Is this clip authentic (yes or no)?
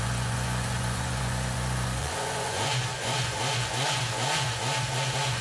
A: no